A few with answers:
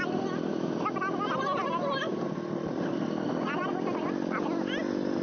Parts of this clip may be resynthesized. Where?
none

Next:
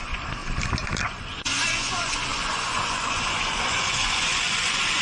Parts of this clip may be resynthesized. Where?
0.0-0.4 (vocoder, Vocos); 1.1-5.0

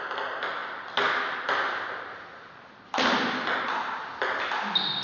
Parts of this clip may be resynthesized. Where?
none

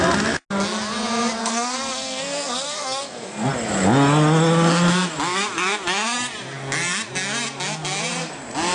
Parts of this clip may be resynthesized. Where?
1.4-3.5 (codec, SNAC)

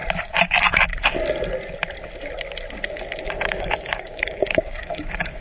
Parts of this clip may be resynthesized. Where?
3.2-5.4 (codec, DAC)

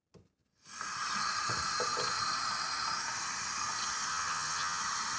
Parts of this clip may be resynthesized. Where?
4.1-4.8 (vocoder, HiFi-GAN)

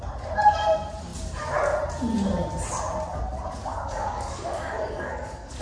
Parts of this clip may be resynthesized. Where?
3.7-5.6 (codec, DAC)